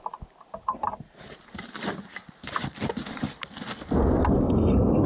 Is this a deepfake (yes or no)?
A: yes